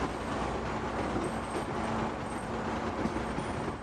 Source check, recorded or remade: recorded